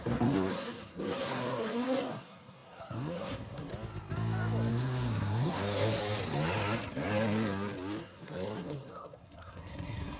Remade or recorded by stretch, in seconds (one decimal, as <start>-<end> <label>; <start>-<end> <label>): 0.0-3.7 remade; 3.7-4.7 recorded; 4.7-6.0 remade; 6.0-8.0 recorded; 8.0-10.2 remade